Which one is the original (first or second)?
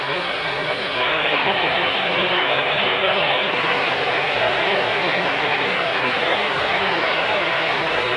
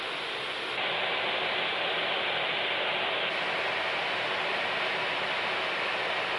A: second